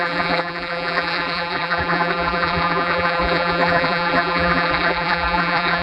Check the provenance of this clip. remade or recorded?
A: remade